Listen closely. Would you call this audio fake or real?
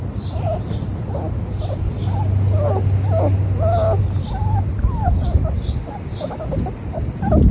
real